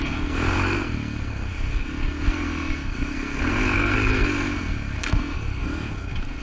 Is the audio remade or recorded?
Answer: remade